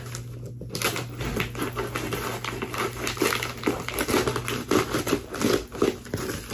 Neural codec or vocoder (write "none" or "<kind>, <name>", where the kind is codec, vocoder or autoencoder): none